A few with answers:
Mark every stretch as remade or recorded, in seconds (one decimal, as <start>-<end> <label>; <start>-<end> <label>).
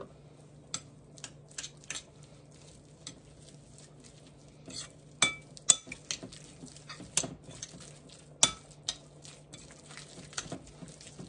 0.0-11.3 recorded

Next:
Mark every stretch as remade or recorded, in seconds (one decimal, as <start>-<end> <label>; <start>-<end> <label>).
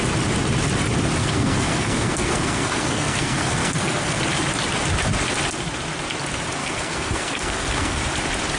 0.0-1.2 recorded; 1.2-4.2 remade; 4.2-6.6 recorded; 6.6-8.0 remade; 8.0-8.6 recorded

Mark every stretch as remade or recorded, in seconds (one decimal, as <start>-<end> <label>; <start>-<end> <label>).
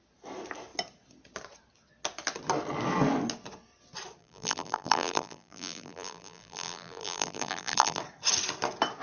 0.0-4.2 recorded; 4.2-8.0 remade; 8.0-9.0 recorded